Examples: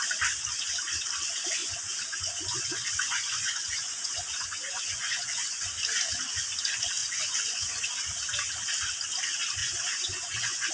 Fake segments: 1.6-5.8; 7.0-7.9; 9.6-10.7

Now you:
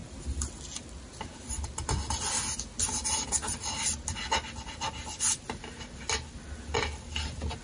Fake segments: none

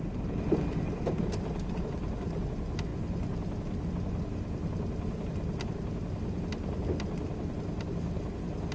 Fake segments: none

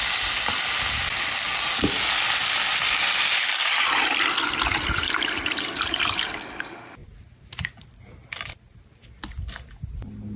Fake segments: 7.0-7.7

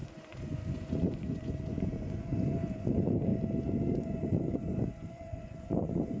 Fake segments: 0.0-3.3; 3.9-6.2

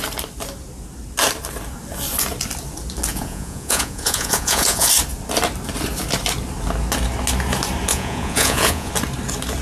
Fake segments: 3.1-4.9; 7.9-8.9

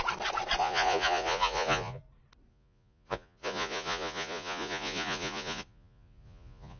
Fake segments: 0.6-2.0; 2.5-6.8